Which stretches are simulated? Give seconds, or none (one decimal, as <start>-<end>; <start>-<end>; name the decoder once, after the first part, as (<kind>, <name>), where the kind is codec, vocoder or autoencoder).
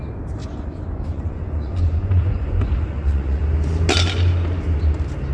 0.4-3.4 (vocoder, Vocos)